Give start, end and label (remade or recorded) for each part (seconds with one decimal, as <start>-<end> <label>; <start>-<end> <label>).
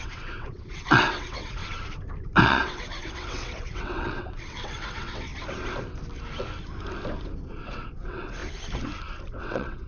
0.0-1.6 remade; 1.6-2.4 recorded; 2.4-5.3 remade; 5.3-7.5 recorded; 7.5-8.4 remade; 8.4-9.4 recorded; 9.4-9.9 remade